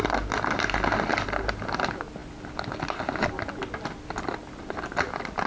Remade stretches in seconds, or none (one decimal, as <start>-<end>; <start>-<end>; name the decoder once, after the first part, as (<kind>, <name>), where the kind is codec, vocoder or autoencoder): none